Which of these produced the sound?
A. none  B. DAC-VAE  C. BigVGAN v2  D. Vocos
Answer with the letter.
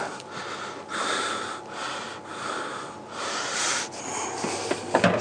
A